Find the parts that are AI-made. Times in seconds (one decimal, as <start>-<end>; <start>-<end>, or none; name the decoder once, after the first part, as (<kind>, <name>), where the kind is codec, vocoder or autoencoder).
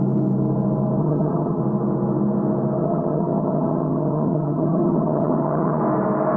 1.0-1.6 (vocoder, HiFi-GAN); 2.8-5.8